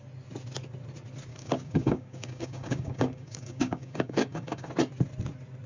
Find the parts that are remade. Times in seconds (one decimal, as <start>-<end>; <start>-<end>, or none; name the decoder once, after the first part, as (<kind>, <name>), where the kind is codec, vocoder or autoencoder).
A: 1.3-4.7 (codec, DAC)